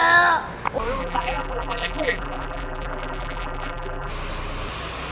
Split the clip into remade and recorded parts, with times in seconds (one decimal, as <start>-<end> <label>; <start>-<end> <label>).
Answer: 0.0-1.0 recorded; 1.0-4.1 remade; 4.1-5.1 recorded